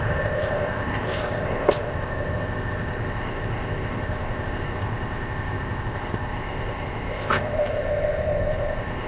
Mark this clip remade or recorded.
remade